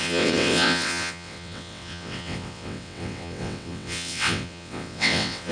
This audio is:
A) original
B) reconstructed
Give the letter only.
B